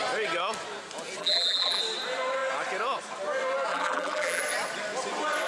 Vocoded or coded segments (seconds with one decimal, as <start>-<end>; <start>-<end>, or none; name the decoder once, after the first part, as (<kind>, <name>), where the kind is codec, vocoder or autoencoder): 1.2-1.8 (vocoder, BigVGAN v2); 3.7-4.4